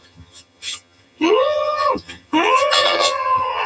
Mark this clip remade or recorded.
remade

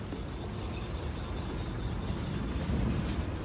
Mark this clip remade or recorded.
recorded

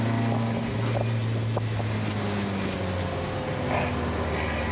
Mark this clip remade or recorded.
recorded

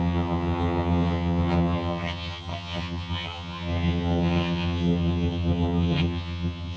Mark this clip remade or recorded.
remade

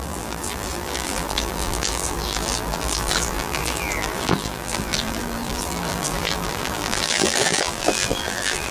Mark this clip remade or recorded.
remade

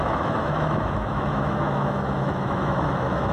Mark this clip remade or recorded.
remade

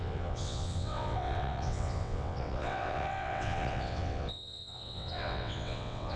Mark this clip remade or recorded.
remade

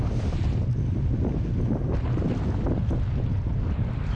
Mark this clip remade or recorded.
recorded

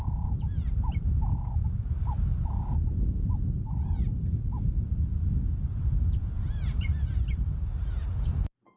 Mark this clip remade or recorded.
remade